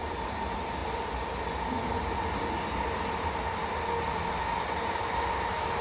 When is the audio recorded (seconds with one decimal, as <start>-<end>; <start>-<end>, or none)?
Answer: 0.0-5.8

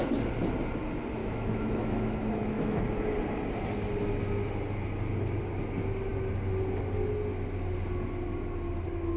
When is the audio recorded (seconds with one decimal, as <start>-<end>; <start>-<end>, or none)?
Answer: 0.0-1.2; 2.8-9.2

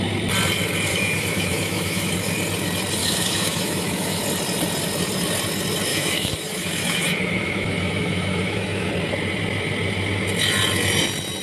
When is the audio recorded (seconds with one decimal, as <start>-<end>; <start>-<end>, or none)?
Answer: 0.0-0.9; 2.1-3.0; 4.2-5.9; 8.9-11.4

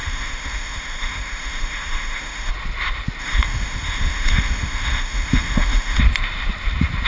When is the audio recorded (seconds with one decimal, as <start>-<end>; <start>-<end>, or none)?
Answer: 2.5-3.2; 6.0-7.1

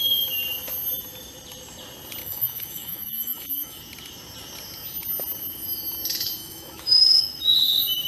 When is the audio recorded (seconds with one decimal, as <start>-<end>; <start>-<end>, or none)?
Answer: 0.0-2.2; 3.8-6.4; 7.2-8.1

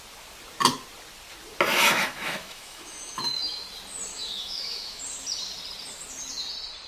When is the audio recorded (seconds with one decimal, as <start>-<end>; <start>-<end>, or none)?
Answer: 0.0-1.7; 3.6-4.1; 5.0-6.9

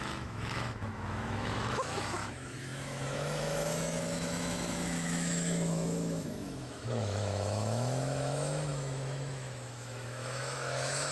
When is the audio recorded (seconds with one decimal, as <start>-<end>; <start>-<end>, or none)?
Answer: none

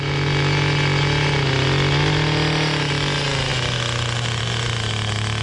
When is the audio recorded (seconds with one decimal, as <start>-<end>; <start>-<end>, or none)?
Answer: 0.0-5.4